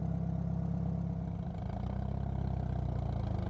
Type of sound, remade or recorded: recorded